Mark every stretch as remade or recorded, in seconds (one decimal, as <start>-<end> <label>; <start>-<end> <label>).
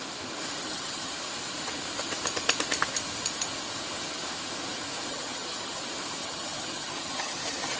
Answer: 0.0-0.6 recorded; 0.6-1.1 remade; 1.1-5.1 recorded; 5.1-5.8 remade; 5.8-6.2 recorded; 6.2-7.8 remade